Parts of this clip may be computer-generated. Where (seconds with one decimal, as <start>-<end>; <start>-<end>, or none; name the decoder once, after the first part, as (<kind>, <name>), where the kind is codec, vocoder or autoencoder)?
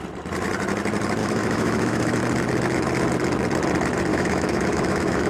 1.2-2.2 (autoencoder, DAC-VAE); 4.1-5.3